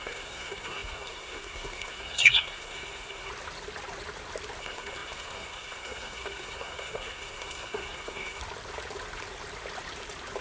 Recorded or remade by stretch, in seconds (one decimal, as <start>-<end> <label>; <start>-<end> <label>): 0.0-3.3 remade; 3.3-4.6 recorded; 4.6-8.4 remade; 8.4-10.4 recorded